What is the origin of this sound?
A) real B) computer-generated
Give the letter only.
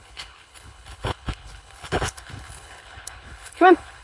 B